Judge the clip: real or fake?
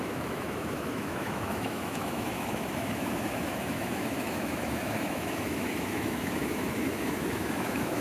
fake